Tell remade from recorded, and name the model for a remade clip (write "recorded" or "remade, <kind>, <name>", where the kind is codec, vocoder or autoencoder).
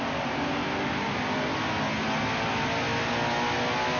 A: recorded